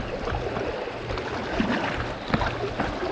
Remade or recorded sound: recorded